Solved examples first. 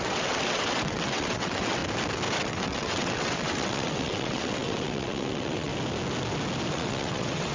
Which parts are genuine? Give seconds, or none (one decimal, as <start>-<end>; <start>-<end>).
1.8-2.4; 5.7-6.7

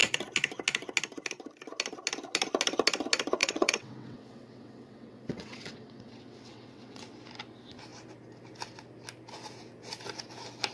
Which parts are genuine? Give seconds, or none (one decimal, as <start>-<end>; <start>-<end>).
0.0-3.4; 7.0-10.7

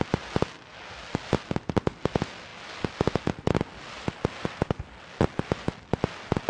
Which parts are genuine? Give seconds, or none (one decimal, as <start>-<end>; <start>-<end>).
0.0-6.5